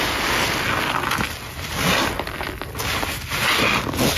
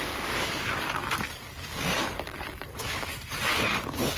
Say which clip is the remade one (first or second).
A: second